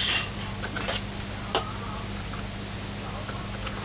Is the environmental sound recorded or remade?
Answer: recorded